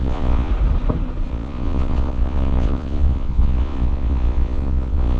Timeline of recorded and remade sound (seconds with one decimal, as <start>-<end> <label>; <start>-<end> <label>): 0.0-0.5 remade; 0.5-1.3 recorded; 1.3-5.2 remade